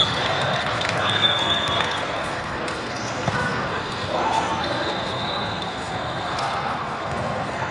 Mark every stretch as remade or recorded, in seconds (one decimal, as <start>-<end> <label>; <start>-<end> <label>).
0.0-7.7 remade